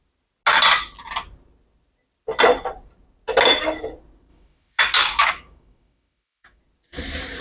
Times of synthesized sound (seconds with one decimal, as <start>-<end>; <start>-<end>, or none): 4.3-4.8; 5.2-6.6